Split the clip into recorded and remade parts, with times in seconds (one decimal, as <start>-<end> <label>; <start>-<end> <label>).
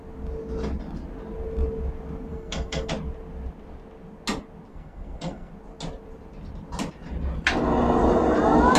0.0-2.3 recorded; 2.3-2.9 remade; 2.9-4.7 recorded; 4.7-5.5 remade; 5.5-8.8 recorded